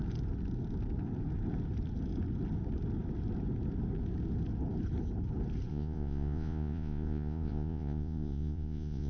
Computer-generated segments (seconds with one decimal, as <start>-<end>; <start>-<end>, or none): 5.7-9.1